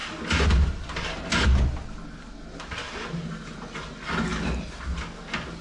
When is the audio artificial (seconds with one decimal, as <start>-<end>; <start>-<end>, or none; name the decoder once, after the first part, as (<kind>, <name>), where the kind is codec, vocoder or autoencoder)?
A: none